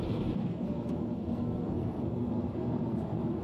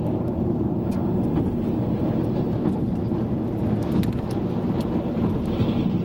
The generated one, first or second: first